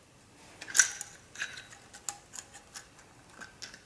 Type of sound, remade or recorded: recorded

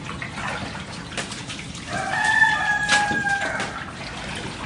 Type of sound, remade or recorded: recorded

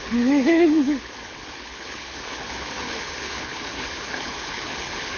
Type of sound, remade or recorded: remade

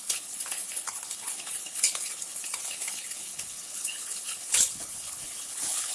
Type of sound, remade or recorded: remade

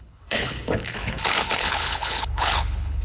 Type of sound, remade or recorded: remade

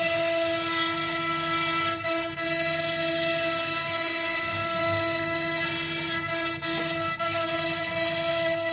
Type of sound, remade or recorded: recorded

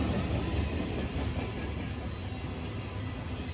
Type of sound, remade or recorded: recorded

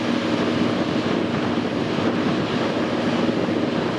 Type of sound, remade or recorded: recorded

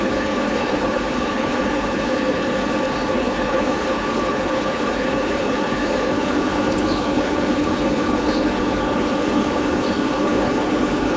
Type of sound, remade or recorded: remade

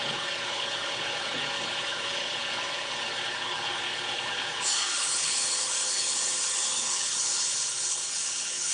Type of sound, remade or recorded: remade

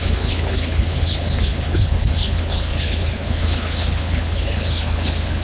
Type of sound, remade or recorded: remade